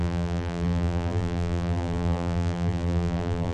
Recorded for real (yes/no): no